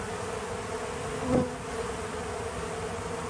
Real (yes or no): yes